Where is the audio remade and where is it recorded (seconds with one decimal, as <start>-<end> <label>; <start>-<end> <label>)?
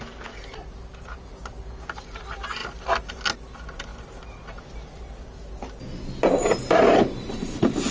0.0-7.9 recorded